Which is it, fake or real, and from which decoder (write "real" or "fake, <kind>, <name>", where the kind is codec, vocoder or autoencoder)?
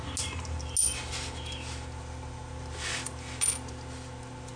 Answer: real